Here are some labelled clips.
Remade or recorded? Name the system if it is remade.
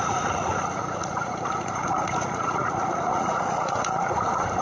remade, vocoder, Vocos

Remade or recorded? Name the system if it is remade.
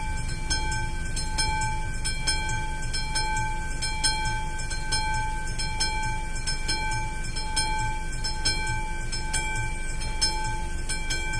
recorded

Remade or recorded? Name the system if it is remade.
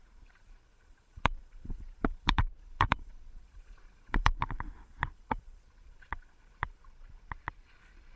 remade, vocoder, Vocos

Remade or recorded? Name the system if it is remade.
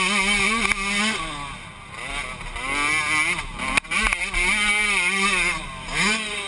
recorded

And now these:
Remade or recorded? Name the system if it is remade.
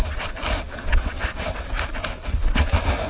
recorded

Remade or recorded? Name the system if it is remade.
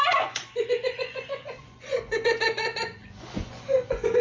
remade, vocoder, Vocos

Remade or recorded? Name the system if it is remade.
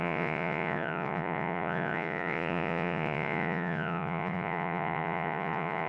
remade, vocoder, Vocos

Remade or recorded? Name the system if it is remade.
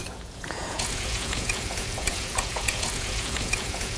remade, vocoder, Vocos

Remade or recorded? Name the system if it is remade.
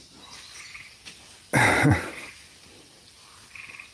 recorded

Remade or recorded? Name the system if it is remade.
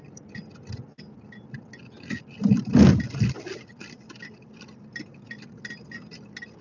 recorded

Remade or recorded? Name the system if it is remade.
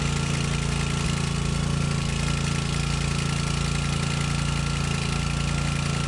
recorded